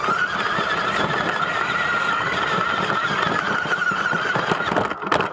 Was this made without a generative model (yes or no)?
yes